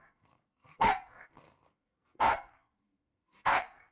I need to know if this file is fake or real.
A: fake